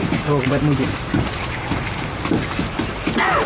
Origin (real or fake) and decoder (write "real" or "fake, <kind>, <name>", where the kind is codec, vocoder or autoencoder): real